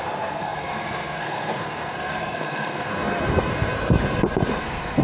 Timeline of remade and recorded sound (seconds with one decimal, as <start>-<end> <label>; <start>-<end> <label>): 0.0-2.9 remade; 2.9-4.6 recorded; 4.6-5.0 remade